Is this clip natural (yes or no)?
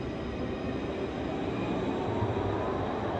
yes